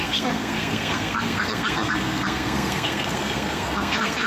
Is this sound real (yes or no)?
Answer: no